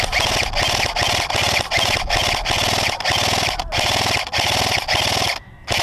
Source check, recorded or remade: recorded